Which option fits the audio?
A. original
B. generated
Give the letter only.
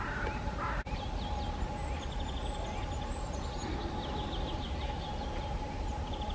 A